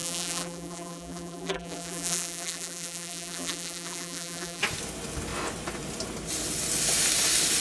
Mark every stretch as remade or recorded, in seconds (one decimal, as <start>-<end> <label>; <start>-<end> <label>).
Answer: 0.0-4.6 remade; 4.6-7.6 recorded